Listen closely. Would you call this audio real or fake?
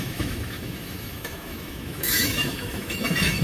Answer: fake